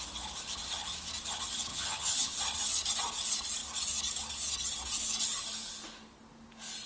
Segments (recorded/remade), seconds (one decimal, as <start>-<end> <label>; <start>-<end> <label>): 0.0-1.7 recorded; 1.7-2.4 remade; 2.4-6.9 recorded